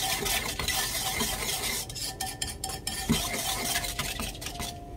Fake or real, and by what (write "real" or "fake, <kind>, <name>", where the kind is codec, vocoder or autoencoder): fake, vocoder, BigVGAN v2